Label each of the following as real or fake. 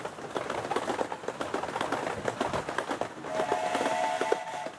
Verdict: real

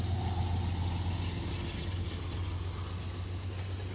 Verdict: real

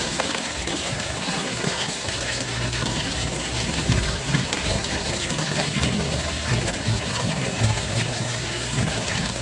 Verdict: fake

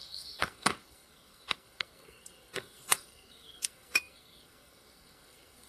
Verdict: fake